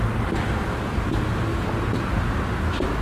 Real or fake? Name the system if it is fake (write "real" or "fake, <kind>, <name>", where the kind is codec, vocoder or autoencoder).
real